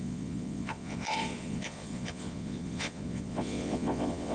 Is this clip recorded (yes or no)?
no